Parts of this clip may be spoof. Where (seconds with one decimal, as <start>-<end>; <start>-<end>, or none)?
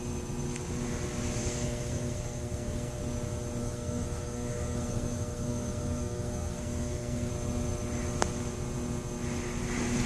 1.4-3.0; 3.6-7.3